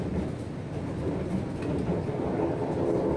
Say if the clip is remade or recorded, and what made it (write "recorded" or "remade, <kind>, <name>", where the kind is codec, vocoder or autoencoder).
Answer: recorded